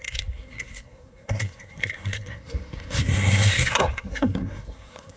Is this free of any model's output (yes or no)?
no